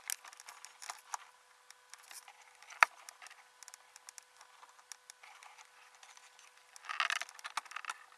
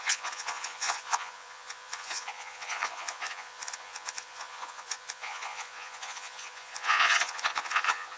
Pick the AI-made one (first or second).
second